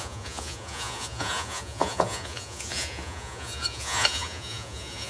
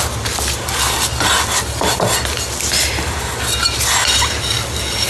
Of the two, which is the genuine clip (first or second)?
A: second